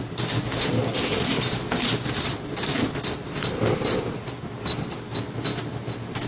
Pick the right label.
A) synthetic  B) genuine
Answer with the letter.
B